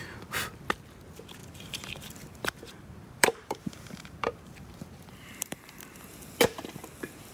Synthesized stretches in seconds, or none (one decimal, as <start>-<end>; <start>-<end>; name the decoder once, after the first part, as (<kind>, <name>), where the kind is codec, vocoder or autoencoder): 1.4-5.8 (vocoder, BigVGAN v2)